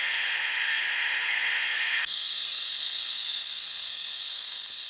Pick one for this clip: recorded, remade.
remade